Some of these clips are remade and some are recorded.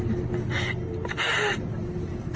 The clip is recorded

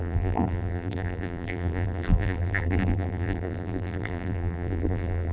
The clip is remade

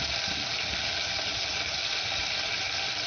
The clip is recorded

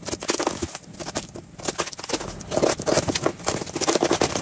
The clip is recorded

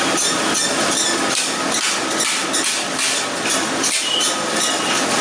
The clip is recorded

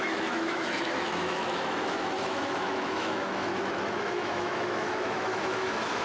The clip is remade